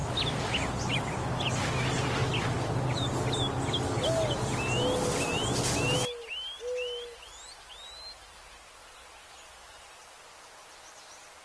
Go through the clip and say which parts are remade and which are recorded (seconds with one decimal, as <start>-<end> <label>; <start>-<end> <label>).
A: 0.0-11.4 recorded